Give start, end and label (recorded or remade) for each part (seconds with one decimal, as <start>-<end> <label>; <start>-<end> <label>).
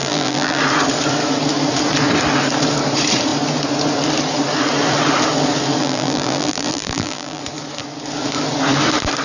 0.0-0.6 remade; 0.6-5.8 recorded; 5.8-7.4 remade; 7.4-9.2 recorded